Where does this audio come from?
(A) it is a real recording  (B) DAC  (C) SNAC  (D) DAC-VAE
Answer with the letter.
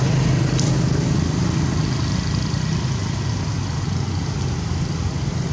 A